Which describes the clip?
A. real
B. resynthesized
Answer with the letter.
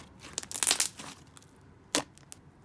A